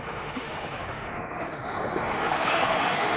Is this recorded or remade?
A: remade